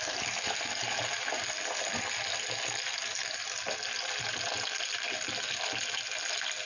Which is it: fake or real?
real